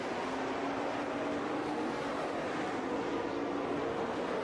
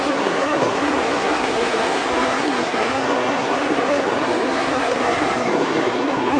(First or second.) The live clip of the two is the first